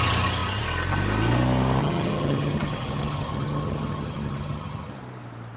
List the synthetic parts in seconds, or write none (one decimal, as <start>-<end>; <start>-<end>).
1.8-4.9